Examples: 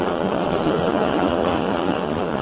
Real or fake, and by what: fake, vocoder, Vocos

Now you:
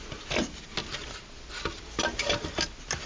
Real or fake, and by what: real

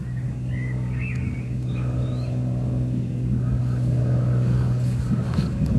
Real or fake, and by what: fake, codec, DAC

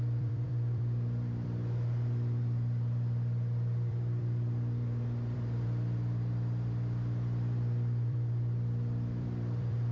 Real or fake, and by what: fake, vocoder, BigVGAN v2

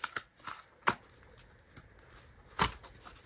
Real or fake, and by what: real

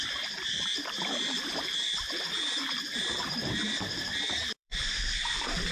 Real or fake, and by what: fake, vocoder, BigVGAN v2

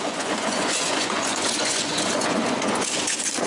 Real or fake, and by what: fake, vocoder, Vocos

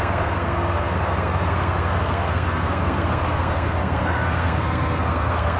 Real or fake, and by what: fake, codec, SNAC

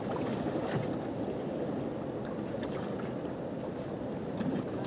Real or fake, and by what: real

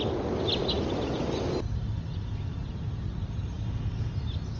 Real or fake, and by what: real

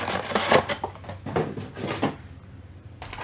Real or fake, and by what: real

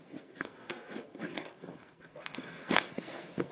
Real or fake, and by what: fake, codec, SNAC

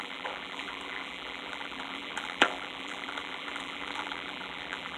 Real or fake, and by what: fake, vocoder, BigVGAN v2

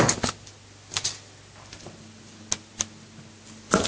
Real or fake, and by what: real